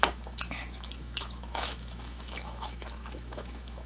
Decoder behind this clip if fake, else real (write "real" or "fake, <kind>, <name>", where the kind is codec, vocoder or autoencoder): fake, autoencoder, DAC-VAE